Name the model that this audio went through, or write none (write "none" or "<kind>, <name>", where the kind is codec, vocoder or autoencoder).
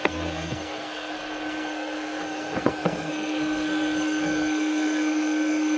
codec, SNAC